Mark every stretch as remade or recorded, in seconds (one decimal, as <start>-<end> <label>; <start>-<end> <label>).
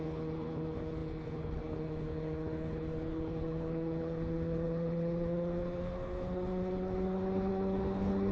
0.0-8.3 remade